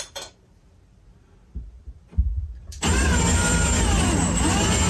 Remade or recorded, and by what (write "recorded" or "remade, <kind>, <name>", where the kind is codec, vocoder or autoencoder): remade, vocoder, BigVGAN v2